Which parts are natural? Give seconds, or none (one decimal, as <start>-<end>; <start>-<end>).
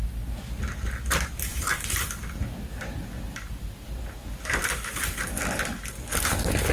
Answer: 0.0-6.7